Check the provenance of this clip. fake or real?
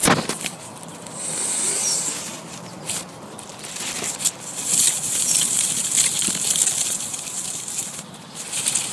real